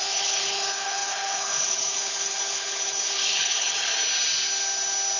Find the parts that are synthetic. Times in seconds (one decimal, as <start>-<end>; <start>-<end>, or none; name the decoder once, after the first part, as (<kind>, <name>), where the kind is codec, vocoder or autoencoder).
0.0-3.9 (codec, HILCodec)